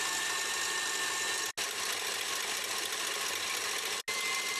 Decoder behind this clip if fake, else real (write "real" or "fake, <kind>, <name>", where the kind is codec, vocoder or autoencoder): real